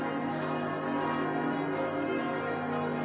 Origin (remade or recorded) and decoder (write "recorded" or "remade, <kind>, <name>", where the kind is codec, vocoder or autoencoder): recorded